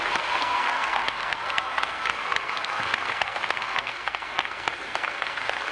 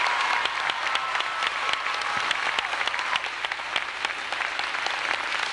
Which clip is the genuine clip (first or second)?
second